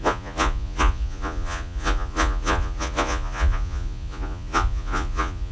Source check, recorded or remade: remade